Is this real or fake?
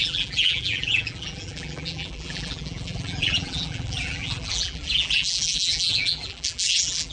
fake